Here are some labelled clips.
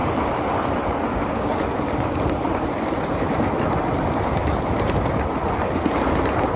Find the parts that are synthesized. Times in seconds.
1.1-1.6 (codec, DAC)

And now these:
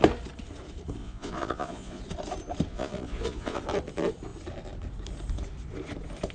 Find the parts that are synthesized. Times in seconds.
1.0-2.0 (vocoder, Vocos); 2.7-3.6

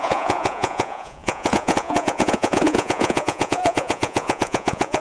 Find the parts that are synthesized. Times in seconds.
0.0-5.0 (vocoder, Vocos)

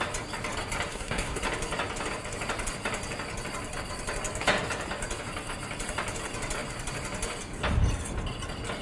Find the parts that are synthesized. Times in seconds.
0.9-1.4 (codec, SNAC)

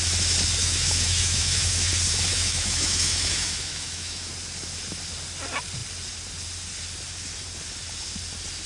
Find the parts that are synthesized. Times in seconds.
0.6-1.9 (autoencoder, DAC-VAE); 2.3-4.3

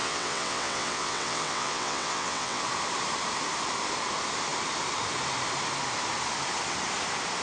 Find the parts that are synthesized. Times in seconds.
0.0-2.6 (vocoder, WaveNeXt)

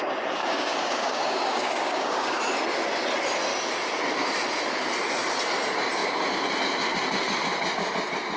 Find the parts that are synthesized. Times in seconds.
0.4-2.4 (codec, DAC)